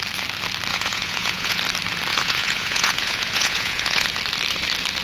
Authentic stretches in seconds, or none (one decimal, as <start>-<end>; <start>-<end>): 0.0-0.7; 1.6-2.1; 4.1-5.0